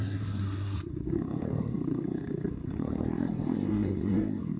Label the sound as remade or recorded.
remade